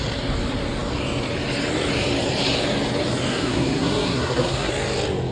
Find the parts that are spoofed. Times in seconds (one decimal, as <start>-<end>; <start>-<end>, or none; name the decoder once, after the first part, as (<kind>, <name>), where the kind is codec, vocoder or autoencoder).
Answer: 3.3-4.7 (codec, SNAC)